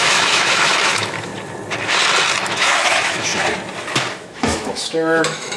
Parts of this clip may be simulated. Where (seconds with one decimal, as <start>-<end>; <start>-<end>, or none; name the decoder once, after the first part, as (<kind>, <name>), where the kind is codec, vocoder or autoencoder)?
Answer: 0.0-1.3 (autoencoder, DAC-VAE); 2.4-3.3; 4.1-5.6